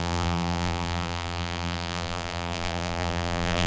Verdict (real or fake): fake